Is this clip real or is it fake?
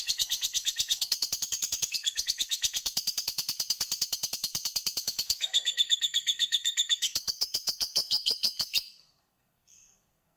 fake